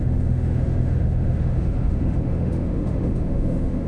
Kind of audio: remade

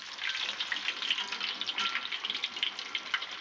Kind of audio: recorded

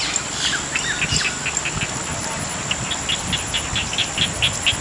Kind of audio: recorded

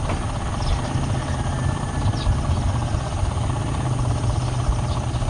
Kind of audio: recorded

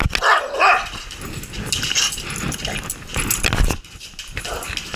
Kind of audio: recorded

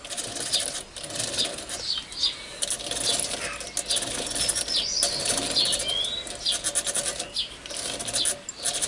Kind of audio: recorded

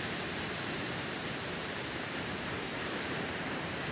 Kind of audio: remade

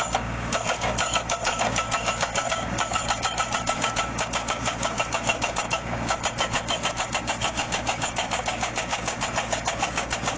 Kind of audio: remade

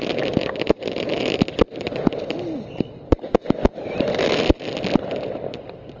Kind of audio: recorded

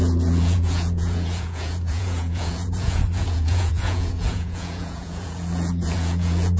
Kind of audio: remade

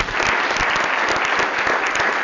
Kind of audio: recorded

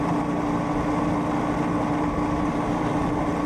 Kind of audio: recorded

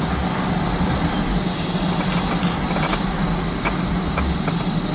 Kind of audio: recorded